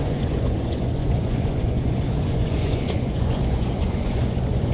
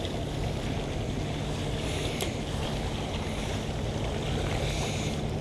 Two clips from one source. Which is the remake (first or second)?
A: first